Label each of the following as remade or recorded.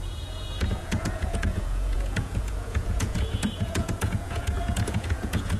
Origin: remade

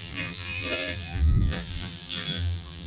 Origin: remade